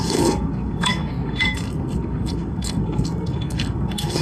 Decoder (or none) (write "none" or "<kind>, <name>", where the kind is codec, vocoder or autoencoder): codec, SNAC